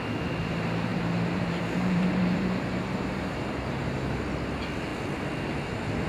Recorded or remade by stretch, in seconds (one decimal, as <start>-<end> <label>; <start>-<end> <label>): 0.0-0.9 recorded; 0.9-4.2 remade; 4.2-6.1 recorded